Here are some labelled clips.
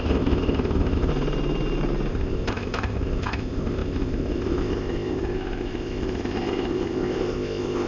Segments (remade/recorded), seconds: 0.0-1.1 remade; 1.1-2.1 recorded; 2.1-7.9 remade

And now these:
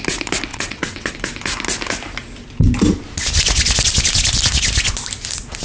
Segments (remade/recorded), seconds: 0.0-0.5 recorded; 0.5-1.1 remade; 1.1-5.6 recorded

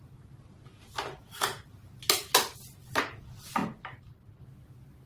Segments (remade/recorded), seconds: 0.0-0.7 recorded; 0.7-2.0 remade; 2.0-5.1 recorded

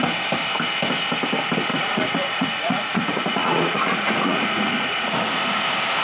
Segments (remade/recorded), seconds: 0.0-1.7 recorded; 1.7-5.3 remade; 5.3-6.0 recorded

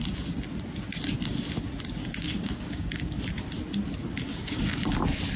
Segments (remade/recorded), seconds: 0.0-2.0 recorded; 2.0-3.2 remade; 3.2-4.3 recorded; 4.3-5.0 remade; 5.0-5.4 recorded

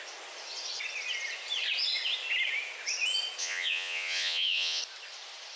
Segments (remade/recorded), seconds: 0.0-3.4 recorded; 3.4-4.8 remade; 4.8-5.6 recorded